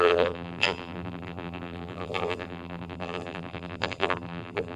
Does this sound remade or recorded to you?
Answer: remade